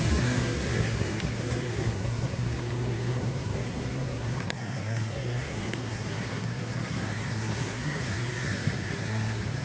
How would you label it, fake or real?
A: fake